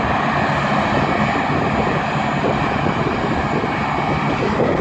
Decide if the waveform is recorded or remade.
recorded